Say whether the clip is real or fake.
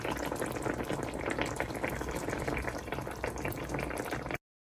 real